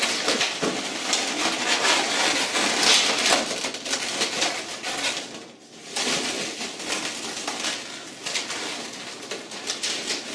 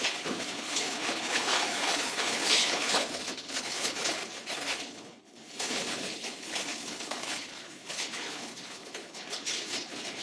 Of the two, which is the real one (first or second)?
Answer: first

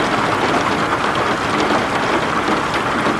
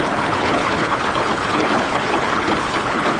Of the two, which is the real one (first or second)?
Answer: first